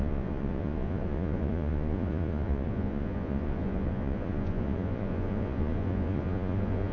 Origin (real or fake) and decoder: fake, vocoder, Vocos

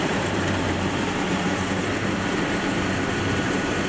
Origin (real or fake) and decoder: fake, vocoder, BigVGAN v2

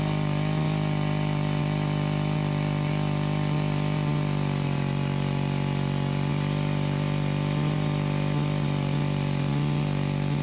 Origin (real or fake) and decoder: real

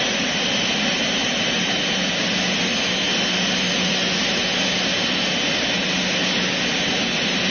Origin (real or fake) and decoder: real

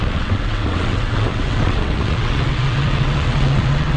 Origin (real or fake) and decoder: fake, vocoder, WaveNeXt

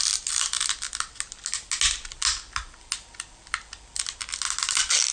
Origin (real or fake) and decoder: real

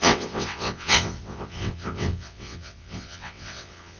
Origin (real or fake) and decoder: fake, vocoder, WaveNeXt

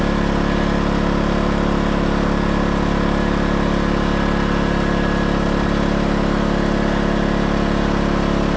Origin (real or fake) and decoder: real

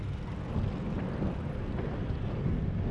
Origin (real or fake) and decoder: real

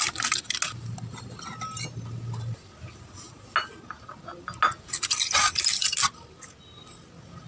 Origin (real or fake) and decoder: real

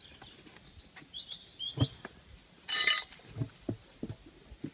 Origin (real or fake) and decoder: real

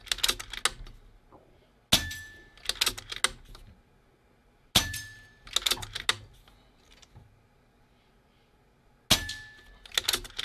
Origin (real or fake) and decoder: real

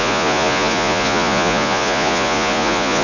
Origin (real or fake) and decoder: fake, vocoder, Vocos